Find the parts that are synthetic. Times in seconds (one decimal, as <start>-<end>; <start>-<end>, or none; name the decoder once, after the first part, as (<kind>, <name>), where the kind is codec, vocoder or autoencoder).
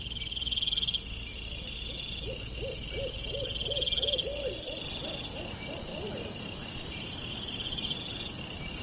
5.9-7.3 (vocoder, BigVGAN v2)